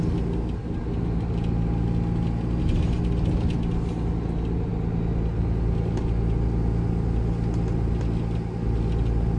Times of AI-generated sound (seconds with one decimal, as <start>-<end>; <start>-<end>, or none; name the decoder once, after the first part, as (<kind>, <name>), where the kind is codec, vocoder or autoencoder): none